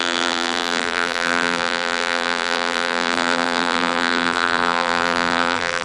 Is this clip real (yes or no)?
no